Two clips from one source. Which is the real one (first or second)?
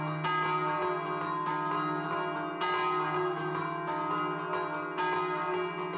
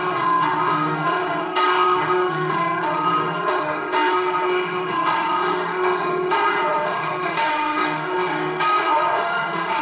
first